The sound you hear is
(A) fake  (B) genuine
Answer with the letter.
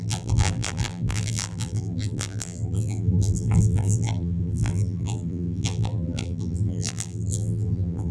A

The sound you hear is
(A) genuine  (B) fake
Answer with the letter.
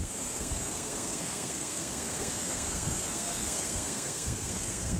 B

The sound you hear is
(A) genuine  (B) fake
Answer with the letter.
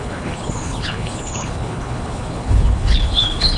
B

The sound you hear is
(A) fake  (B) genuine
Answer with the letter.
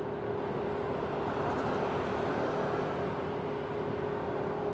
B